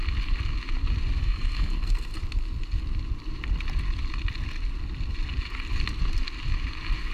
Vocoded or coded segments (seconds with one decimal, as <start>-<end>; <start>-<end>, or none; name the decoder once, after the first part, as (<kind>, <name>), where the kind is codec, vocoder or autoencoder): 1.2-2.2 (codec, SNAC)